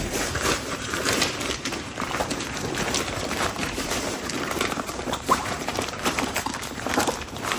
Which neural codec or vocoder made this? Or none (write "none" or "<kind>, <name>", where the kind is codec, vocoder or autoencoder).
vocoder, BigVGAN v2